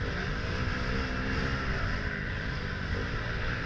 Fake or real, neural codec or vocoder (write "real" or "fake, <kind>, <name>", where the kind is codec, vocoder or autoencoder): real